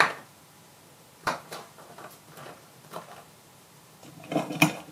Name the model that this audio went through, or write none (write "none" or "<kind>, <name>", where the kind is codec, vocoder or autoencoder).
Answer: vocoder, BigVGAN v2